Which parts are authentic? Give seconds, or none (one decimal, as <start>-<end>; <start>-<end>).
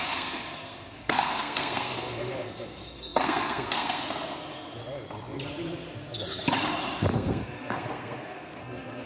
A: 4.8-7.1